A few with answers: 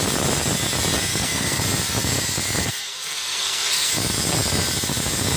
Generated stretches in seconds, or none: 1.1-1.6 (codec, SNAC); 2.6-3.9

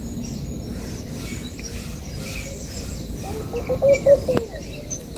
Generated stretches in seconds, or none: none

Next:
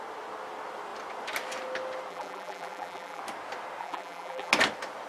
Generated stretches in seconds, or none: 2.1-3.2 (vocoder, BigVGAN v2); 3.8-4.5

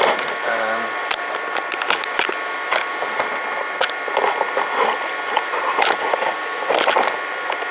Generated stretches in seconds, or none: none

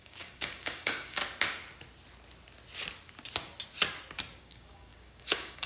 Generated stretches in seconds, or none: 0.0-1.2 (codec, DAC); 4.4-5.7